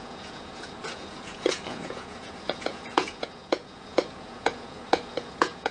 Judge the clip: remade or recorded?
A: remade